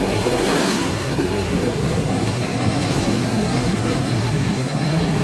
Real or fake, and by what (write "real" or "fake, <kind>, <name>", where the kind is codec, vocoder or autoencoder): fake, codec, SNAC